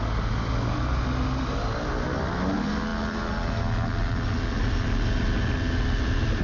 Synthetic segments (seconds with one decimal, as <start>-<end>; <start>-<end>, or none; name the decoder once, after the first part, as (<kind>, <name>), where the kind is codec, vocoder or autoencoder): none